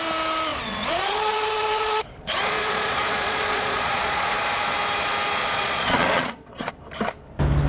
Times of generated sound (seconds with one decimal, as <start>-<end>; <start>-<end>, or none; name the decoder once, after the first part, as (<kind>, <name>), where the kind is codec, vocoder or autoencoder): 0.5-4.3 (vocoder, Vocos); 5.4-6.7